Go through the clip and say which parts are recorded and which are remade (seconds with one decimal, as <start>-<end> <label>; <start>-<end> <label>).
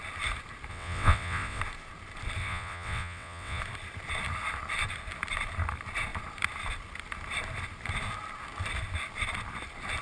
0.0-0.7 recorded; 0.7-1.6 remade; 1.6-2.4 recorded; 2.4-3.6 remade; 3.6-10.0 recorded